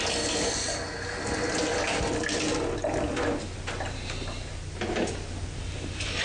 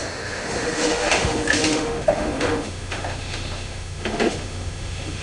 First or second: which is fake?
second